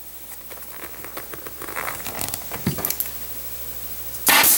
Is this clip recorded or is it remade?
recorded